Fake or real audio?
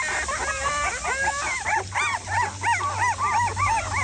real